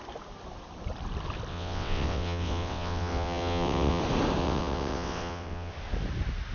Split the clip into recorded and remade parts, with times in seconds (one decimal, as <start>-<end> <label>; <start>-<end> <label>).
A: 0.0-1.5 recorded; 1.5-4.0 remade; 4.0-4.4 recorded; 4.4-5.7 remade; 5.7-6.5 recorded